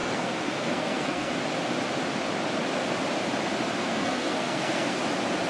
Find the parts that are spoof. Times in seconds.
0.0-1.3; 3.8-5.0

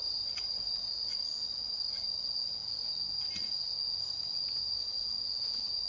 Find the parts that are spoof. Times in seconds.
0.0-0.9

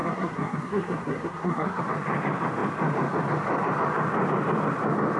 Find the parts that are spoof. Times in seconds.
0.0-1.8

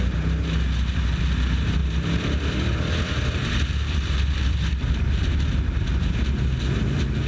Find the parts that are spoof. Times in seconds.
1.8-5.4

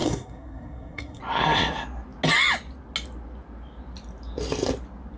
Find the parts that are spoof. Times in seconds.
0.0-1.2

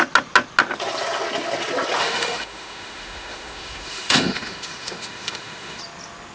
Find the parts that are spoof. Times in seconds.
2.0-5.8

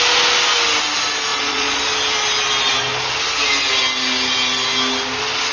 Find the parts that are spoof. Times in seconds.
1.3-1.8